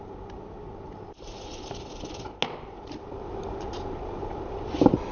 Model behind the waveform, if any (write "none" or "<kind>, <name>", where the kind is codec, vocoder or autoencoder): none